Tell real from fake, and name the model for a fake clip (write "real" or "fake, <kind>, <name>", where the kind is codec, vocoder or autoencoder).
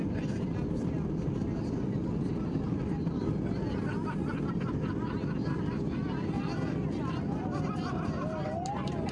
real